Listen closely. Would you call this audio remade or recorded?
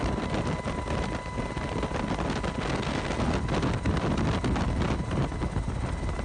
recorded